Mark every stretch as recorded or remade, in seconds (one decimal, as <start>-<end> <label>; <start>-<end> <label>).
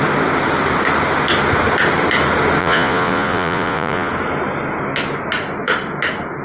0.0-2.6 recorded; 2.6-4.1 remade; 4.1-6.4 recorded